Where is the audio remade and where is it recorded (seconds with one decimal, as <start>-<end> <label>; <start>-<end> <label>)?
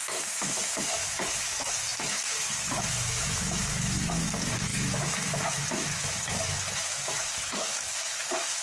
0.0-8.6 remade